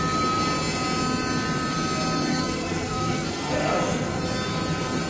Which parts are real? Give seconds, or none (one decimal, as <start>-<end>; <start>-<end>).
0.0-2.3; 4.2-5.1